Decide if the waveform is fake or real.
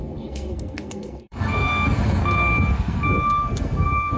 fake